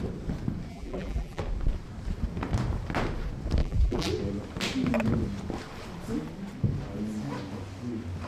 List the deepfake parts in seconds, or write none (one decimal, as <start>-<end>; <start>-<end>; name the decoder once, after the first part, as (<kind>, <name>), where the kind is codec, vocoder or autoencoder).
0.7-1.4 (vocoder, BigVGAN v2); 3.6-4.1